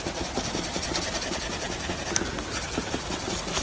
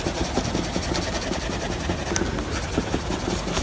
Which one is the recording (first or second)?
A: second